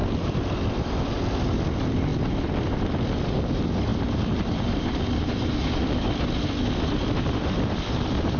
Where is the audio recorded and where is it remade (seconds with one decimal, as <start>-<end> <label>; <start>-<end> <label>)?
0.0-2.1 remade; 2.1-2.6 recorded; 2.6-8.4 remade

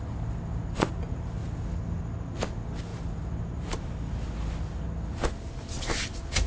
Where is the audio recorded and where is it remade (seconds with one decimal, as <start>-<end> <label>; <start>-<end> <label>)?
0.0-6.5 recorded